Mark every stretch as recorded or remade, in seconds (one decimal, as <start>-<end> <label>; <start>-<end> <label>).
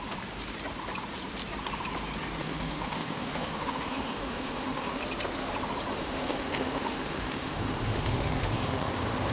0.0-2.4 recorded; 2.4-5.0 remade; 5.0-5.9 recorded; 5.9-8.9 remade; 8.9-9.3 recorded